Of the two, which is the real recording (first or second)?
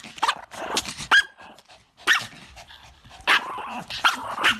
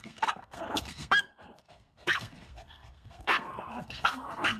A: first